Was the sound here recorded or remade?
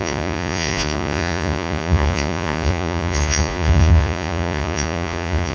remade